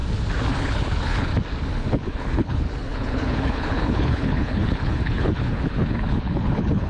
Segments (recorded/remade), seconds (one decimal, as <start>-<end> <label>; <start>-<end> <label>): 0.0-0.5 recorded; 0.5-1.3 remade; 1.3-1.9 recorded; 1.9-6.9 remade

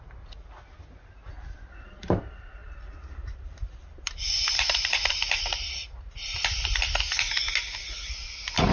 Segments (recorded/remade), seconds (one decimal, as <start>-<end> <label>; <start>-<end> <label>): 0.0-2.6 recorded; 2.6-6.7 remade; 6.7-8.7 recorded